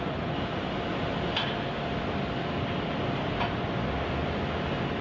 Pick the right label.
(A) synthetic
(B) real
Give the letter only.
B